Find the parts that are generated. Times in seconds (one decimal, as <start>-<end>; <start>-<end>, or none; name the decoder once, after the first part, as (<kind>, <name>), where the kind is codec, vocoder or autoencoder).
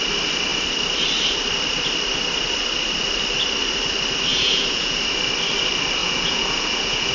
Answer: 4.3-5.0 (vocoder, Vocos); 6.0-7.1